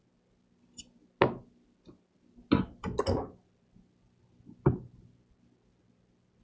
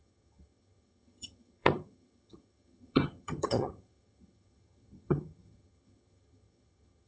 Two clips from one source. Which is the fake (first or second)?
second